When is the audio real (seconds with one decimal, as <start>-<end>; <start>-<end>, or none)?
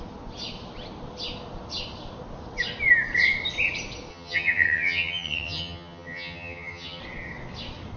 0.0-4.1; 7.0-8.0